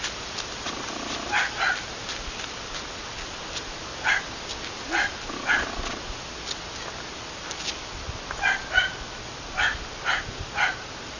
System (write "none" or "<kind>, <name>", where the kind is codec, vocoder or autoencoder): none